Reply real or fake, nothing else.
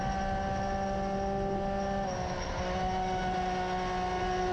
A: real